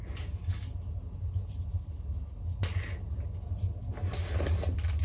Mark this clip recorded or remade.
recorded